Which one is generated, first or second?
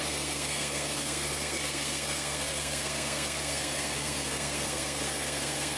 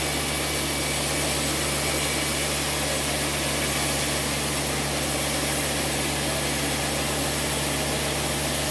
first